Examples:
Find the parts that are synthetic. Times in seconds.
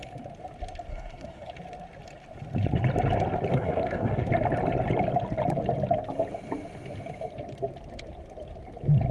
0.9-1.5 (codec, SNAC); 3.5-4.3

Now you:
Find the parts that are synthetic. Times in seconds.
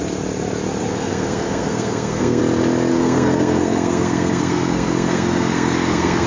0.8-2.4 (codec, SNAC); 2.9-6.3